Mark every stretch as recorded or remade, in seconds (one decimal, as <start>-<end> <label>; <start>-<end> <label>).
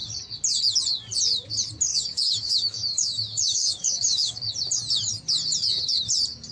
0.0-1.9 recorded; 1.9-4.5 remade; 4.5-6.5 recorded